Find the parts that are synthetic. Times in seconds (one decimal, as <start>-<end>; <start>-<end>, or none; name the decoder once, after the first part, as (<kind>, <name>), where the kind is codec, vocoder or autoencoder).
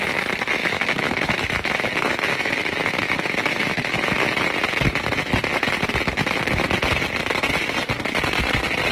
0.6-4.3 (autoencoder, DAC-VAE)